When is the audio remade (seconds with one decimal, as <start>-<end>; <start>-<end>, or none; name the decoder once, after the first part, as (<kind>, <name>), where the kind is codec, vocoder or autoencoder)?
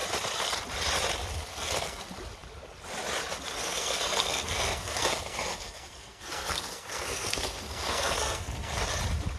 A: 1.5-2.0 (codec, SNAC); 3.6-8.8